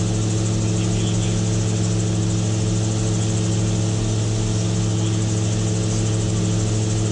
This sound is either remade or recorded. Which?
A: recorded